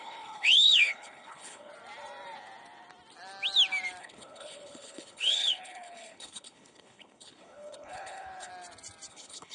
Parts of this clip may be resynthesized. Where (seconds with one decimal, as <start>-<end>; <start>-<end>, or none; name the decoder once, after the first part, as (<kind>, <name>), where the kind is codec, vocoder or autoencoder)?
0.0-1.7 (codec, HILCodec); 4.0-8.5; 9.1-9.5